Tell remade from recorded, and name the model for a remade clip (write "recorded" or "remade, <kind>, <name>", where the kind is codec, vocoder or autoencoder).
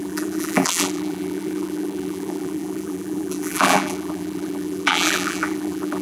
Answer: remade, vocoder, BigVGAN v2